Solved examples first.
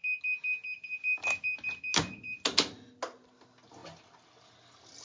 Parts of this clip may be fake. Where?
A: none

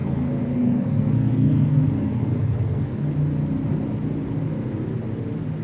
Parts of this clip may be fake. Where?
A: 0.0-3.1 (codec, SNAC)

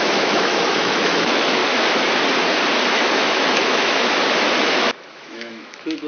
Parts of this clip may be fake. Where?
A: 0.0-1.6 (autoencoder, DAC-VAE); 2.9-4.0; 4.6-6.1

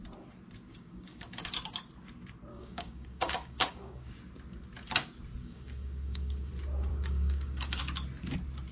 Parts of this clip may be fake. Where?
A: 0.7-1.4 (codec, DAC); 2.5-4.1; 5.4-6.5; 6.9-7.8

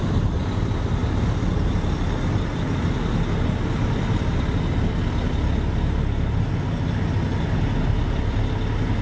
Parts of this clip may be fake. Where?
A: none